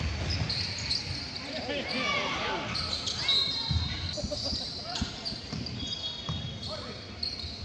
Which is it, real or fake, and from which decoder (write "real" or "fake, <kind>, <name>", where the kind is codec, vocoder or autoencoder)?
real